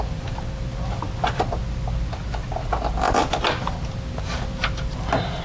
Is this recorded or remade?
recorded